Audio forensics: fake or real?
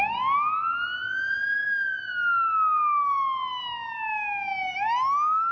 real